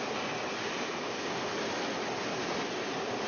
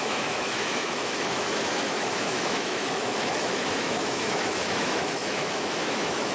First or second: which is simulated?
second